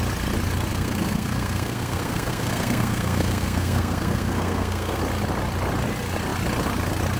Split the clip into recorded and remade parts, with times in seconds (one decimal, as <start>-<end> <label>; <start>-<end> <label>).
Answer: 0.0-0.7 recorded; 0.7-5.0 remade; 5.0-7.2 recorded